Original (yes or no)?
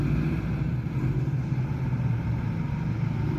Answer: yes